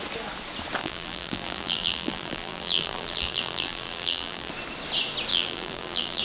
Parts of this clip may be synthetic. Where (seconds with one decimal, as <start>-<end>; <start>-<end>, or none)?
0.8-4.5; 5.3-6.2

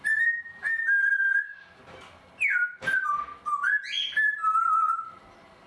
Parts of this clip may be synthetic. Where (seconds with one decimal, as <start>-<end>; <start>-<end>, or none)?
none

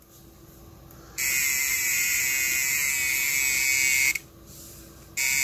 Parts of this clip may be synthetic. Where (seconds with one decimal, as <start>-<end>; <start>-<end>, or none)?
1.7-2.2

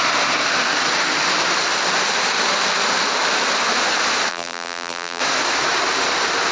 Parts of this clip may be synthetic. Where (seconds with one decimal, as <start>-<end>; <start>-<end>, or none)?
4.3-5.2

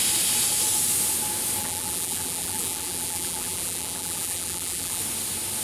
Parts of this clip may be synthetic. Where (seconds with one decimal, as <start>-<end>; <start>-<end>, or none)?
1.6-5.0